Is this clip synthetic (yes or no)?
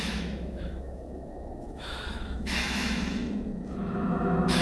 yes